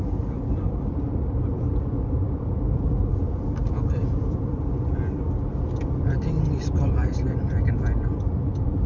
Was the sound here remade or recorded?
remade